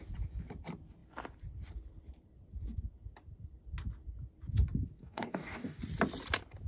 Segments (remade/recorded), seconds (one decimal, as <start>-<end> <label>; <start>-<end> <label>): 0.0-5.0 recorded; 5.0-5.8 remade; 5.8-6.7 recorded